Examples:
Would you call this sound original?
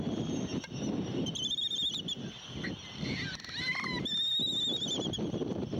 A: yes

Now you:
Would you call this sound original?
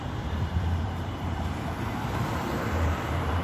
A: no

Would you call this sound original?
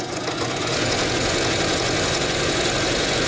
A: no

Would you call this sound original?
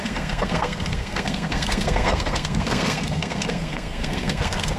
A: no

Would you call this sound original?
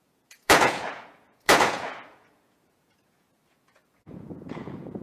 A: no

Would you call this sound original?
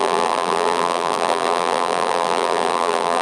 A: no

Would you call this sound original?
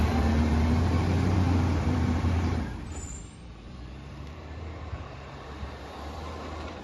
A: no